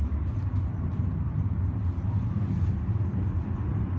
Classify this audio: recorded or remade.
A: recorded